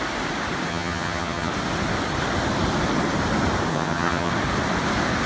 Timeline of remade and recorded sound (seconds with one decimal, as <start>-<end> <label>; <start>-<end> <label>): 0.0-0.7 recorded; 0.7-1.5 remade; 1.5-3.7 recorded; 3.7-4.3 remade; 4.3-5.3 recorded